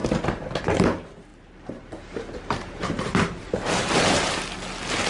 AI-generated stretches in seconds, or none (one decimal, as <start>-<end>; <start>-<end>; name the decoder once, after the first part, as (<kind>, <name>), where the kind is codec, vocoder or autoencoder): 0.0-0.6 (vocoder, BigVGAN v2); 1.3-4.4